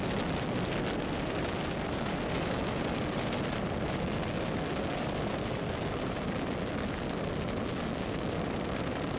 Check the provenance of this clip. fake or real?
real